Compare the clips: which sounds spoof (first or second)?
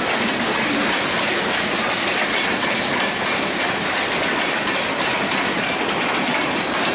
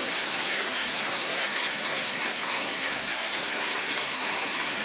second